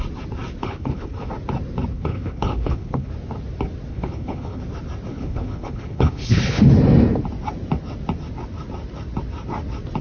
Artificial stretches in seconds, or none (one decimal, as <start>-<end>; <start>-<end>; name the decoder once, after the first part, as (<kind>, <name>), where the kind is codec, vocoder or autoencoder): 0.6-1.3 (codec, HILCodec); 1.9-3.1; 3.9-4.6; 5.1-6.6